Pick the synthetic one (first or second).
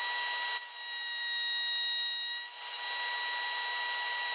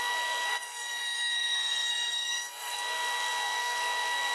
second